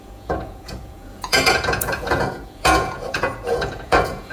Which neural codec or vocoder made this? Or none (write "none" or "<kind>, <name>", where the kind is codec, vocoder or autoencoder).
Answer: vocoder, Vocos